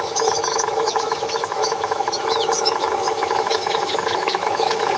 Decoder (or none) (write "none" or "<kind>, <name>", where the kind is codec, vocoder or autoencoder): autoencoder, DAC-VAE